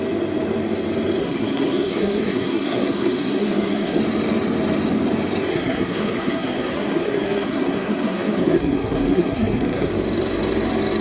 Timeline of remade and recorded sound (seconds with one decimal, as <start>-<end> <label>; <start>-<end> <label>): 0.0-1.2 recorded; 1.2-4.0 remade; 4.0-5.5 recorded; 5.5-9.9 remade; 9.9-11.0 recorded